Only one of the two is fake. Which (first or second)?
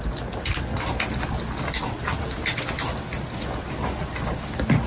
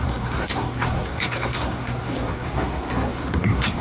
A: second